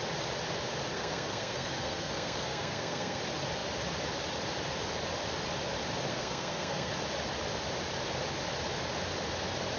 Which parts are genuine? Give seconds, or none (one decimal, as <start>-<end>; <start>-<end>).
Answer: 0.0-0.9; 3.2-6.1; 6.9-9.8